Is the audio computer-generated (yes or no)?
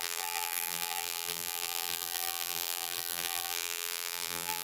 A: yes